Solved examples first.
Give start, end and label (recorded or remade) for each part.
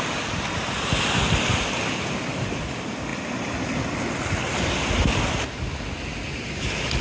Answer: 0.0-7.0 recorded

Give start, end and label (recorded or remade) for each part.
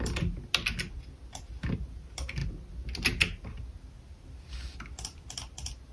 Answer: 0.0-5.9 recorded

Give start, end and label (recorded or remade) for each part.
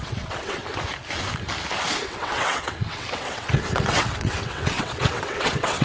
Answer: 0.0-0.6 remade; 0.6-2.1 recorded; 2.1-5.8 remade